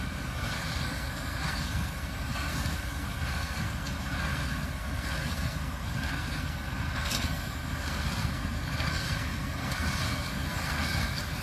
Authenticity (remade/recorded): remade